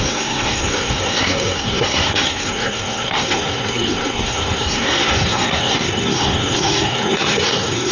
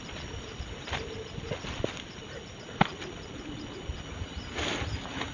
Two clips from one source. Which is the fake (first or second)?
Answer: first